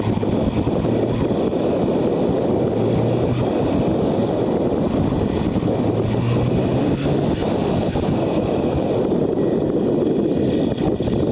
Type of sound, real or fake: real